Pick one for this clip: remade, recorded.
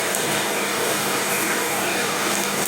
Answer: remade